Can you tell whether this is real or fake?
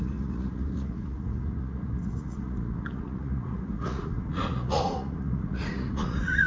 fake